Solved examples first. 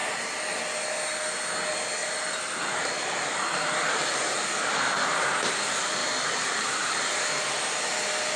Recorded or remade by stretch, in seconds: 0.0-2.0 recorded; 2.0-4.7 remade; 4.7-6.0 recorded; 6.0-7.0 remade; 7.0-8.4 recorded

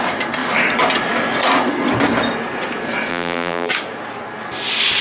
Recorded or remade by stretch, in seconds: 0.0-3.1 recorded; 3.1-3.7 remade; 3.7-5.0 recorded

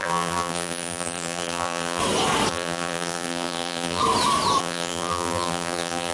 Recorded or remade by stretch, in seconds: 0.0-2.0 remade; 2.0-2.5 recorded; 2.5-4.0 remade; 4.0-4.6 recorded; 4.6-6.1 remade

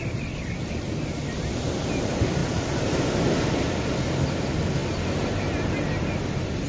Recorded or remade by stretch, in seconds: 0.0-6.7 recorded

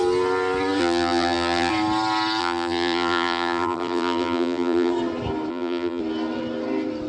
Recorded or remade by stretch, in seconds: 0.0-0.8 recorded; 0.8-1.7 remade; 1.7-2.4 recorded; 2.4-4.9 remade; 4.9-5.5 recorded; 5.5-6.0 remade; 6.0-7.1 recorded

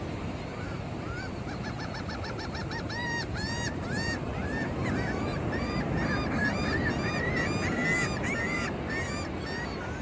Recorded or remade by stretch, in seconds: 0.0-0.5 recorded; 0.5-5.8 remade; 5.8-6.4 recorded; 6.4-6.9 remade; 6.9-10.0 recorded

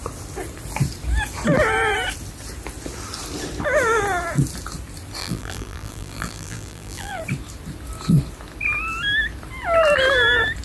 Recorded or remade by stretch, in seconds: 0.0-5.2 recorded; 5.2-7.2 remade; 7.2-10.6 recorded